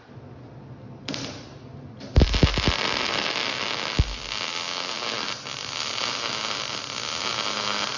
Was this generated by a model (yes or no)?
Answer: no